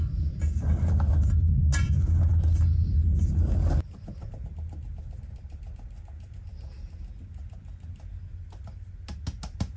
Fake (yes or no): no